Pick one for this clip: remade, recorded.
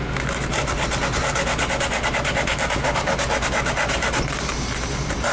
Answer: recorded